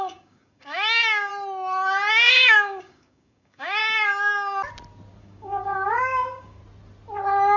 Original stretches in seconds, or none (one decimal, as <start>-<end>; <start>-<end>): 1.3-2.1; 3.8-5.2; 6.6-7.6